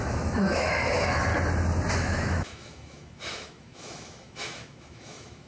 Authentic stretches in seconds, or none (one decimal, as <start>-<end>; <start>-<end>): 1.3-1.9